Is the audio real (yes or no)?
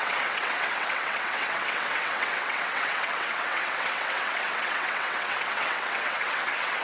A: no